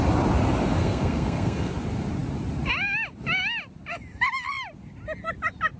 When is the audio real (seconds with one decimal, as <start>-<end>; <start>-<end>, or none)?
0.0-0.8; 1.7-5.8